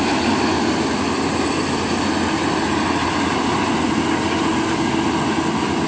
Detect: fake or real real